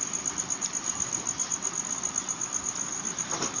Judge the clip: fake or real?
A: real